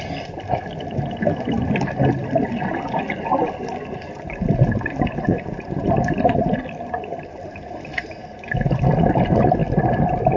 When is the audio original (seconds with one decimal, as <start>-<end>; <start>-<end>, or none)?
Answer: 0.0-10.4